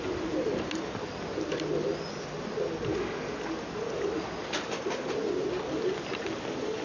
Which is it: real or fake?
real